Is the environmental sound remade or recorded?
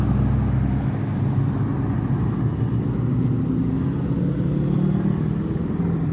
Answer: recorded